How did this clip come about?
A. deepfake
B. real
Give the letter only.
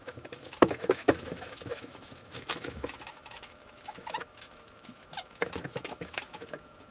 A